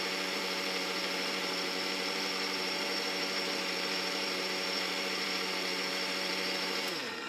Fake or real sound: fake